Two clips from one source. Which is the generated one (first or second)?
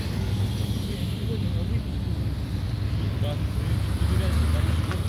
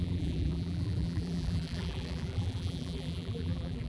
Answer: second